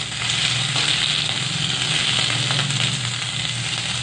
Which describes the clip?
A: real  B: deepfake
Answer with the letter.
A